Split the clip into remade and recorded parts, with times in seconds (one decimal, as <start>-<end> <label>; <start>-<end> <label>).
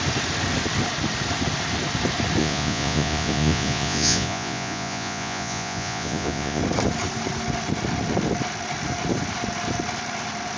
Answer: 0.0-2.4 recorded; 2.4-6.6 remade; 6.6-10.6 recorded